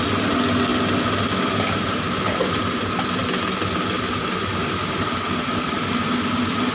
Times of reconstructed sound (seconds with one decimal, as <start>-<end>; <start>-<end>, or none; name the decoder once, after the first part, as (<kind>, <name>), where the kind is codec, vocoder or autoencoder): none